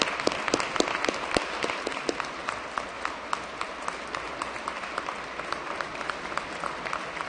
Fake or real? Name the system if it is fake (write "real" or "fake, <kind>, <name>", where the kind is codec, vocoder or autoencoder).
real